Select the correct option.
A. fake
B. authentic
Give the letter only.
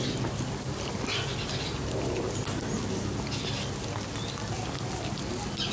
B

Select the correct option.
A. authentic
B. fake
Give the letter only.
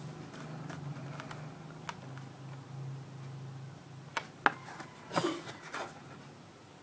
A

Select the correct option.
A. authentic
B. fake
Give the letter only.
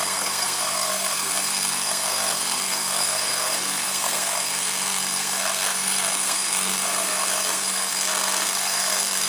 B